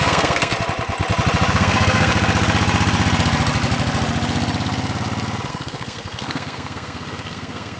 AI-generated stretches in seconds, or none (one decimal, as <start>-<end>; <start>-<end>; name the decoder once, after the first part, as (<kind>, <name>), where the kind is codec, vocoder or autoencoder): 0.0-0.5 (codec, SNAC); 1.5-2.1; 5.5-7.8